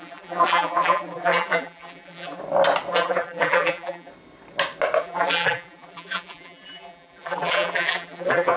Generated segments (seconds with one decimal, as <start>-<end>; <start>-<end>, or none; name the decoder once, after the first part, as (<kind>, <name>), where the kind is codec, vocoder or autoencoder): 0.0-2.4 (vocoder, BigVGAN v2); 2.9-4.1; 5.0-8.6